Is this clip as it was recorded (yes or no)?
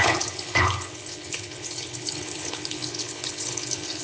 no